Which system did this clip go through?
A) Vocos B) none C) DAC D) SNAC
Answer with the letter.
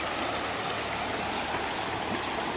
B